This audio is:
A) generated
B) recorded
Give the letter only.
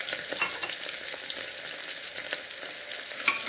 B